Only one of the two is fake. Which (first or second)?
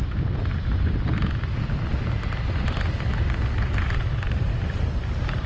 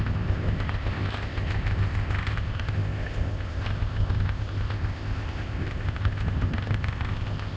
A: second